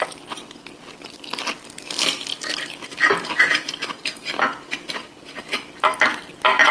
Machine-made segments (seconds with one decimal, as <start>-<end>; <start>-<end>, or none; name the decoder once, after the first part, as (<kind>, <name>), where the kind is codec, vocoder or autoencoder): none